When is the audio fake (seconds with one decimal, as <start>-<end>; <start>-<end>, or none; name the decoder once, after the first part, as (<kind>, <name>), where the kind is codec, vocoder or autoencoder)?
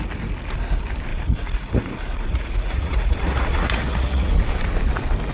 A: 1.1-4.3 (vocoder, Vocos)